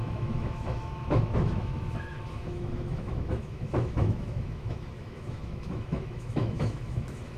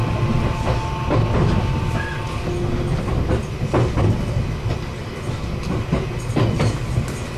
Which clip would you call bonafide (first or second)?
second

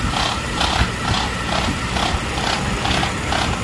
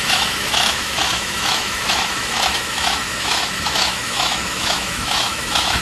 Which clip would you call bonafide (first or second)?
first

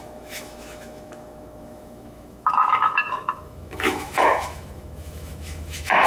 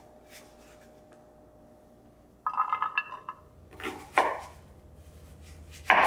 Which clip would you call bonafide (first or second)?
second